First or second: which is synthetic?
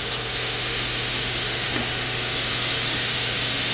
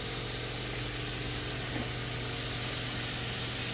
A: first